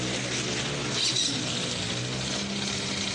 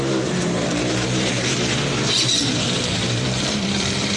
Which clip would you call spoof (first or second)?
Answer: second